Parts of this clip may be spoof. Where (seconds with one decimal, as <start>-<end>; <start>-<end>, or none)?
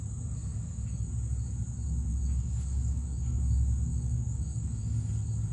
0.5-1.1; 2.1-3.4; 3.9-5.1